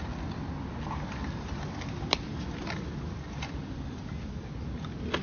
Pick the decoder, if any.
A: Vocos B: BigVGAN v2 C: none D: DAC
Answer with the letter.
C